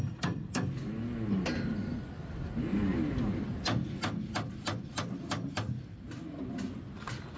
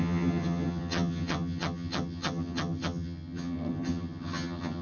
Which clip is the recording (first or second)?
first